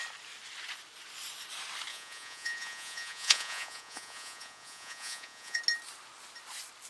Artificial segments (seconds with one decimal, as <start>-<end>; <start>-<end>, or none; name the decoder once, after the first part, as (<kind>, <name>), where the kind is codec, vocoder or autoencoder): 1.9-5.6 (vocoder, Vocos)